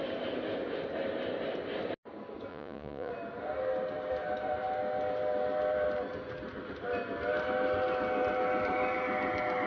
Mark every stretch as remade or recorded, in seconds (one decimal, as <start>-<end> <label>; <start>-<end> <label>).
0.0-2.5 recorded; 2.5-3.1 remade; 3.1-9.7 recorded